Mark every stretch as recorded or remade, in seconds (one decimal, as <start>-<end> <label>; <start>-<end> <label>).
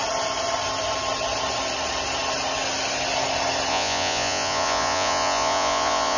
0.0-3.7 recorded; 3.7-6.2 remade